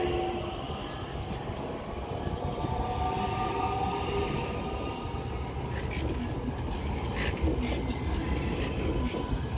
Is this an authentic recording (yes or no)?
yes